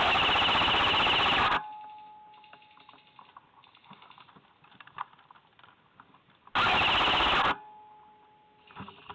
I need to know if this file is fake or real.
real